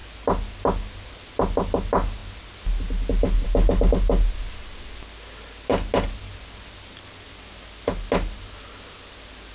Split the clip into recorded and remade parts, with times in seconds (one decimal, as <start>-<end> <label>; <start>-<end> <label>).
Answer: 0.0-9.5 recorded

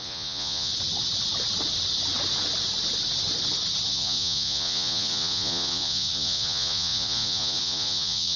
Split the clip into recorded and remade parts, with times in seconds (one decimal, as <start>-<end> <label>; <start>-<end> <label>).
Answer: 0.0-0.7 remade; 0.7-3.9 recorded; 3.9-8.4 remade

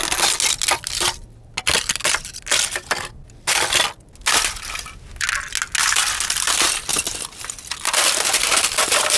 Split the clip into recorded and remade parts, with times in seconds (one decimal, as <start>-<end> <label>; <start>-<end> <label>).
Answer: 0.0-6.9 recorded; 6.9-8.0 remade; 8.0-9.2 recorded

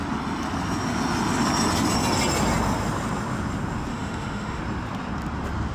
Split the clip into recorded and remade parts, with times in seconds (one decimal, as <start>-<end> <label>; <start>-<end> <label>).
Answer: 0.0-3.9 recorded; 3.9-4.6 remade; 4.6-5.7 recorded

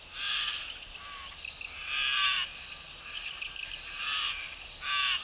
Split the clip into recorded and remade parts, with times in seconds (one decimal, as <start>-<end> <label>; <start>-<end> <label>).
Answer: 0.0-5.2 recorded

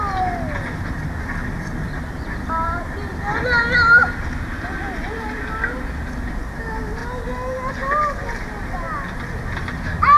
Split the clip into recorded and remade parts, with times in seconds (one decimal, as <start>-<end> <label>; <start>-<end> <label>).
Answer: 0.0-10.2 recorded

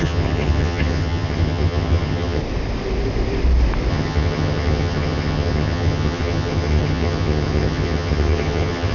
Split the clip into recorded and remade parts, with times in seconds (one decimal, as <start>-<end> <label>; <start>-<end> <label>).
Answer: 0.0-2.4 remade; 2.4-3.9 recorded; 3.9-8.9 remade

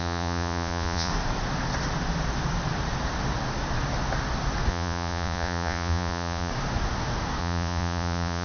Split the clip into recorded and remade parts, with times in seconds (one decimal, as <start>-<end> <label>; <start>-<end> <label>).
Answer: 0.0-1.1 remade; 1.1-4.7 recorded; 4.7-6.5 remade; 6.5-7.4 recorded; 7.4-8.4 remade